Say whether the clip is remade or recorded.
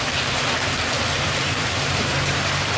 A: remade